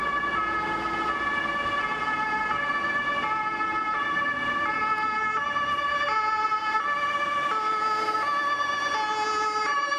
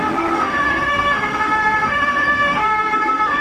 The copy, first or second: second